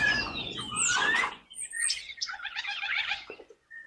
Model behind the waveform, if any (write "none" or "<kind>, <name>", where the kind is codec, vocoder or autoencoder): vocoder, Vocos